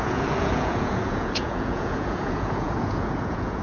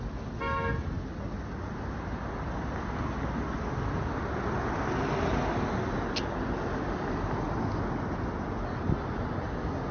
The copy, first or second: first